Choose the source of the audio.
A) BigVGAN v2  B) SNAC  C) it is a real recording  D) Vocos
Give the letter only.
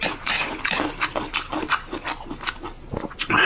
C